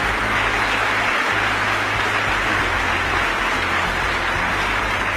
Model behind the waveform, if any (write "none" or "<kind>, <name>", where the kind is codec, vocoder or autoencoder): none